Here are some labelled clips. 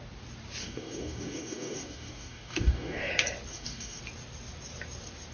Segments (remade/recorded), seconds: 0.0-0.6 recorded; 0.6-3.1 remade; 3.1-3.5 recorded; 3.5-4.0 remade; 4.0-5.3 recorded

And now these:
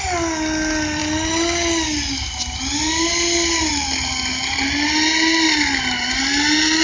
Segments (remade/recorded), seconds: 0.0-6.8 recorded

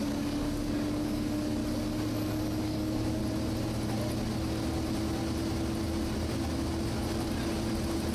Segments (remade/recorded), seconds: 0.0-1.6 remade; 1.6-2.6 recorded; 2.6-3.2 remade; 3.2-8.1 recorded

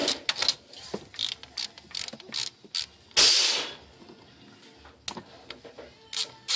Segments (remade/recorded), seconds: 0.0-6.6 recorded

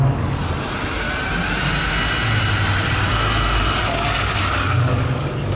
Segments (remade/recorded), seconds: 0.0-0.4 remade; 0.4-3.8 recorded; 3.8-5.6 remade

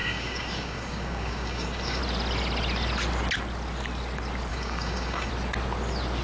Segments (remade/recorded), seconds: 0.0-2.0 remade; 2.0-4.5 recorded; 4.5-5.3 remade; 5.3-6.2 recorded

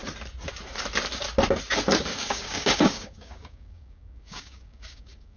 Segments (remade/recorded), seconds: 0.0-2.1 recorded; 2.1-5.4 remade